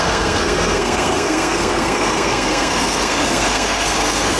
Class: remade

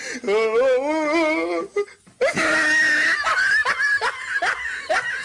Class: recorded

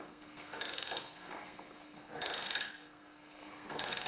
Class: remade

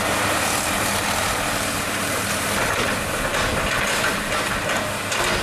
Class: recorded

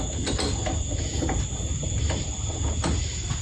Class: recorded